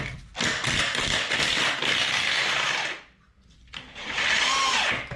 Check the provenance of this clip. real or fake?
real